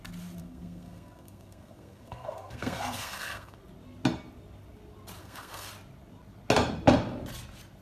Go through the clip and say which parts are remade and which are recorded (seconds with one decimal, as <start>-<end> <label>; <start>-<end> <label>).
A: 0.0-0.4 recorded; 0.4-3.6 remade; 3.6-5.2 recorded; 5.2-5.7 remade; 5.7-7.8 recorded